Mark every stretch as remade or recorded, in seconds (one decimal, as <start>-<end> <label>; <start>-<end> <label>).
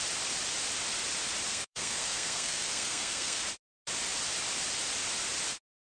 0.0-1.5 recorded; 1.5-3.4 remade; 3.4-5.8 recorded